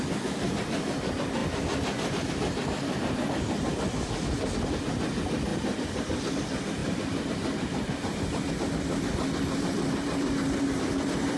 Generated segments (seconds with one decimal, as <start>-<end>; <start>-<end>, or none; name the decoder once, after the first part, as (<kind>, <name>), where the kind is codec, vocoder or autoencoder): 5.5-6.3 (vocoder, BigVGAN v2); 6.8-8.5